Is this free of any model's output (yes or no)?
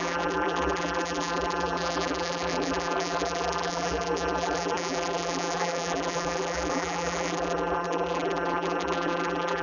no